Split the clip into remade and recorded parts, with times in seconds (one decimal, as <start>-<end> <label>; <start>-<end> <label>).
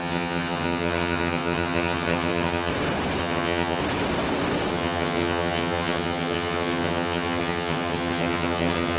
0.0-2.7 remade; 2.7-3.2 recorded; 3.2-3.8 remade; 3.8-4.7 recorded; 4.7-9.0 remade